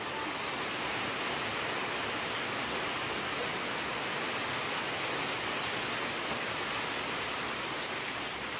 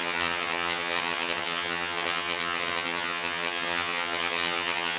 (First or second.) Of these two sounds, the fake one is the second